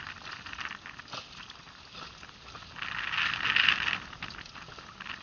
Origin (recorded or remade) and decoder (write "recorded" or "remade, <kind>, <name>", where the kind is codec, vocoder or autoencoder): recorded